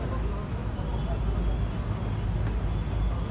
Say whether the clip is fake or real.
real